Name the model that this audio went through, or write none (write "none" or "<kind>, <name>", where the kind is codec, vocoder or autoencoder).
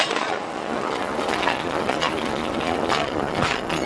vocoder, Vocos